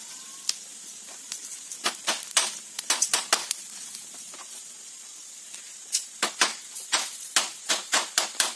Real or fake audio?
fake